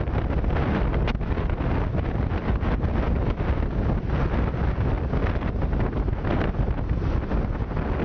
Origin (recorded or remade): recorded